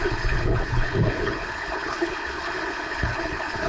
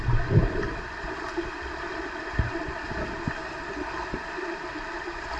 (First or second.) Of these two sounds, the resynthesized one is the first